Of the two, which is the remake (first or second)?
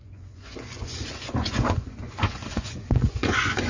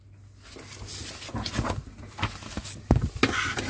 first